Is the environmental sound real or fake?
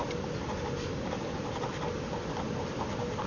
real